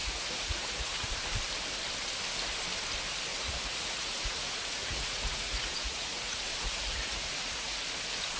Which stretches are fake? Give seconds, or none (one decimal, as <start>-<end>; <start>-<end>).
0.0-1.1; 3.3-7.8